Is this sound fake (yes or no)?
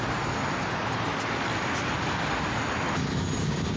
no